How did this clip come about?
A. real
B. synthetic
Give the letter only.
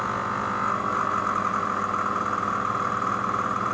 A